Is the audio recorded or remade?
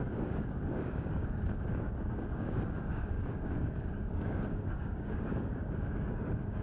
remade